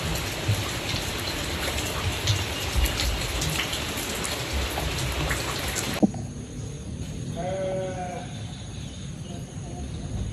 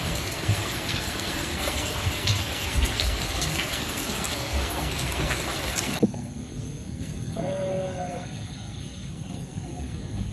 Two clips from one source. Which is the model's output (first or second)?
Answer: second